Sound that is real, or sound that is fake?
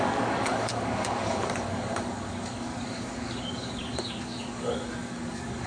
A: fake